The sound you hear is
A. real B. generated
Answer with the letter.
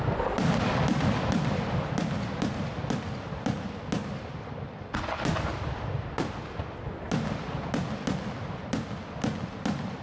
A